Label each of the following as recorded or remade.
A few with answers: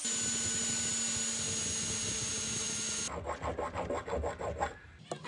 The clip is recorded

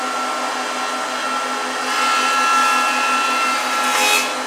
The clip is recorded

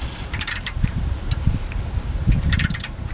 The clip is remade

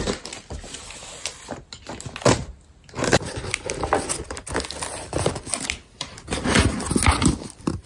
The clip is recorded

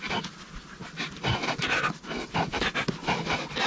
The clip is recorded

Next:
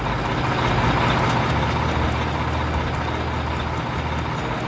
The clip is recorded